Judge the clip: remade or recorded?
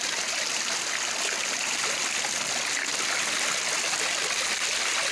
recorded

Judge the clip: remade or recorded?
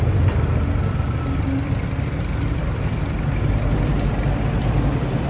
recorded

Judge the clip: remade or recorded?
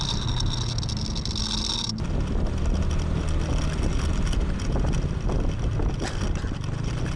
recorded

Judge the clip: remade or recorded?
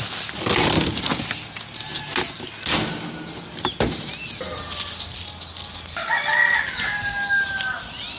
recorded